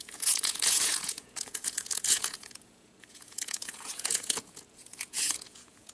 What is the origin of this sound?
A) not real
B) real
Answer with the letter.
A